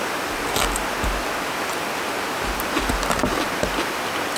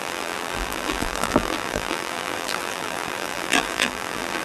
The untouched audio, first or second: first